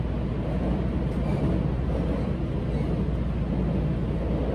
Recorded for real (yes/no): yes